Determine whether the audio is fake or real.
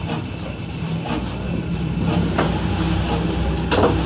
real